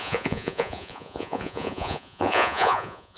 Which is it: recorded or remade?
remade